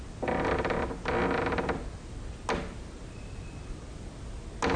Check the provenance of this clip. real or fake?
real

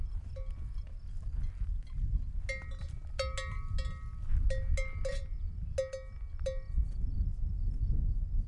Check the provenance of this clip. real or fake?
real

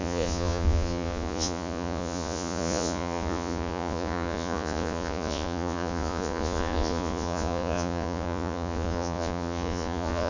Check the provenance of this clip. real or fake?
fake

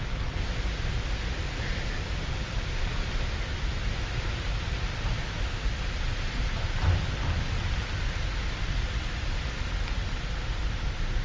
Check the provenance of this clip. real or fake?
real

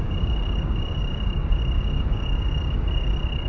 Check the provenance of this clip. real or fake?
fake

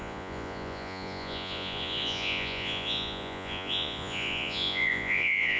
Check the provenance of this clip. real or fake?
fake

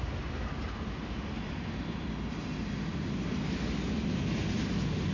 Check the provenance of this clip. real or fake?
real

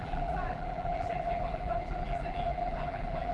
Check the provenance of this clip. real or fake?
fake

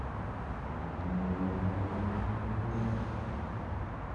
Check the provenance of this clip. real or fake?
real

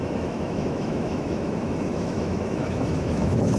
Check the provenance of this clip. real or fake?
fake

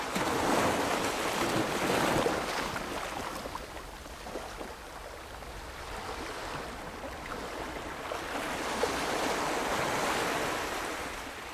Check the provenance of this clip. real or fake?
real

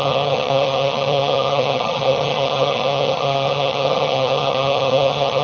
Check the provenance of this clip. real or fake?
fake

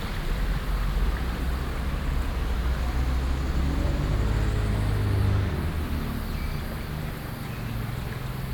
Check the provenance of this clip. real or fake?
real